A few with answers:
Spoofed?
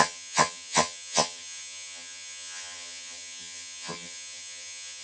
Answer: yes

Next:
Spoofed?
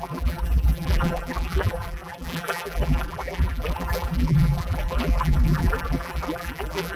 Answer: yes